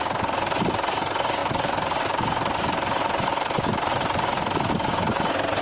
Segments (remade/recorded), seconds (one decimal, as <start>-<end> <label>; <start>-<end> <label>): 0.0-1.4 recorded; 1.4-4.7 remade; 4.7-5.6 recorded